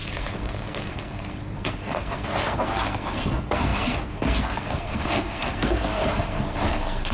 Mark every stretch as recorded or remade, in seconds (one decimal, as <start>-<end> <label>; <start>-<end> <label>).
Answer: 0.0-7.1 remade